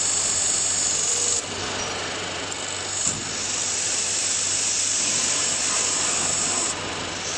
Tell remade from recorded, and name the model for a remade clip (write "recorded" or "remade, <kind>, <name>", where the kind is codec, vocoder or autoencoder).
recorded